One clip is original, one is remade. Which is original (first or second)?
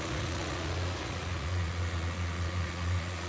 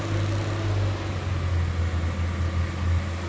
second